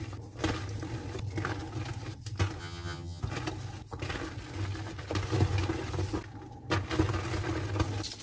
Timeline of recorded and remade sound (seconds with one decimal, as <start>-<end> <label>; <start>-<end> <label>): 0.0-2.6 recorded; 2.6-3.2 remade; 3.2-8.2 recorded